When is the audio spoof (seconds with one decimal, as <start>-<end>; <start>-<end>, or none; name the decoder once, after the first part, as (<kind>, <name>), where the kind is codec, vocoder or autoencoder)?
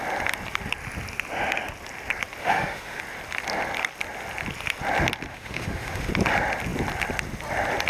2.4-3.0 (autoencoder, DAC-VAE); 5.3-6.1